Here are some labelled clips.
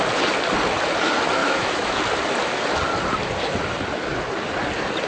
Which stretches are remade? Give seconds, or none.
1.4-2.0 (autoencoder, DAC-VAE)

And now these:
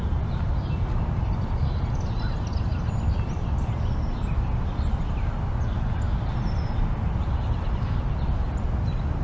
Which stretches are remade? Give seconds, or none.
none

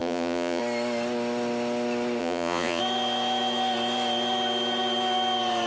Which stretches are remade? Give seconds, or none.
0.0-0.6 (vocoder, Vocos); 2.2-2.8

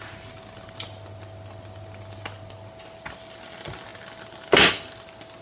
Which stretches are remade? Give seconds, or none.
none

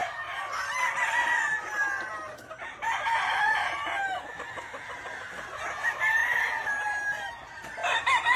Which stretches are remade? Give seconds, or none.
none

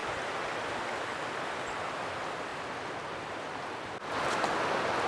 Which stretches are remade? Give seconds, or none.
0.0-0.8 (vocoder, BigVGAN v2); 2.5-4.0